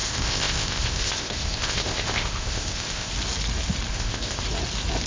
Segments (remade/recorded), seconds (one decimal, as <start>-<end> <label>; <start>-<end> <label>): 0.0-3.1 remade; 3.1-3.9 recorded; 3.9-4.4 remade; 4.4-5.1 recorded